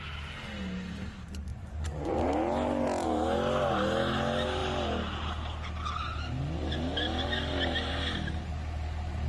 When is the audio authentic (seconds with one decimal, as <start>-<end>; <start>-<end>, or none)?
0.0-1.5; 2.1-9.3